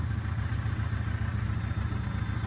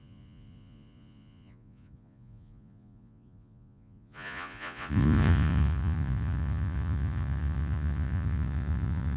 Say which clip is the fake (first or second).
second